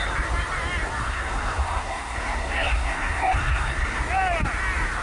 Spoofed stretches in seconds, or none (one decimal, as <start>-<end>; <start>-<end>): 1.0-4.0